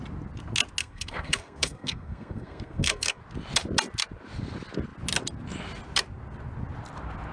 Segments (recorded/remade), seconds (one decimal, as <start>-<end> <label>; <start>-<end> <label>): 0.0-0.8 recorded; 0.8-3.2 remade; 3.2-7.3 recorded